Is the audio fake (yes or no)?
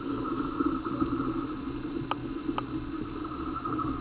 no